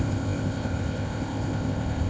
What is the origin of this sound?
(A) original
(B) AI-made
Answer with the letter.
B